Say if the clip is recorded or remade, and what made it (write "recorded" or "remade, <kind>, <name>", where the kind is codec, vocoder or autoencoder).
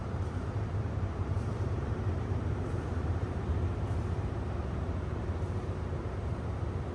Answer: remade, vocoder, BigVGAN v2